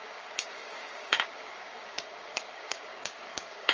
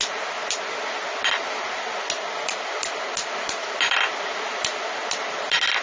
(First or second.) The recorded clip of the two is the second